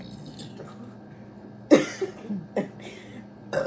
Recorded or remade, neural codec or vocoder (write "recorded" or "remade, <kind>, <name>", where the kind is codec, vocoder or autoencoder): recorded